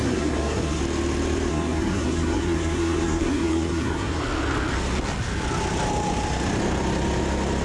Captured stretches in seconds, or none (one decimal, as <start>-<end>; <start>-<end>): 0.8-1.5; 4.2-7.6